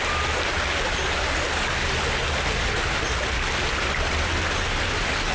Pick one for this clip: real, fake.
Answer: real